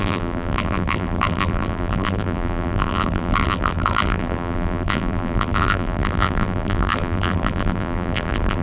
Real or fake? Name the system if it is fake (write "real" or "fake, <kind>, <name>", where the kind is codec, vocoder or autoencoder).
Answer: fake, vocoder, BigVGAN v2